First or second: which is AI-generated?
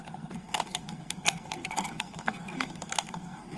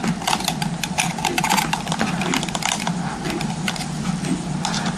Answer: first